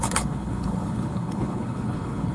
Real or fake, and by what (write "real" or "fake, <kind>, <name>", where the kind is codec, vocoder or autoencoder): fake, codec, HILCodec